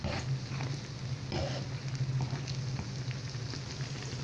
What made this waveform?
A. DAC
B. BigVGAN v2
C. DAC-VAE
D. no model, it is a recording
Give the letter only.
D